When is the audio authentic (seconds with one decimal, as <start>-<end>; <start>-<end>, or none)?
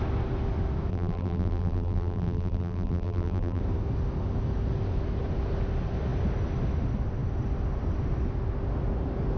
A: 0.0-0.9; 3.6-9.4